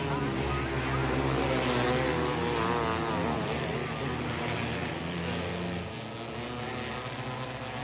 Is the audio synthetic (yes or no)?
no